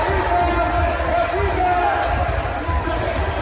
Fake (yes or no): no